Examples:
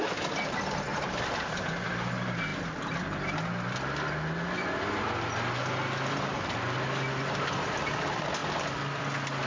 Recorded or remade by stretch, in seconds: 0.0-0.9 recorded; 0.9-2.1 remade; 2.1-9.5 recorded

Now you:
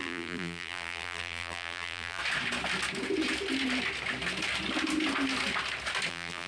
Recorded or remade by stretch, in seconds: 0.0-2.2 remade; 2.2-6.1 recorded; 6.1-6.5 remade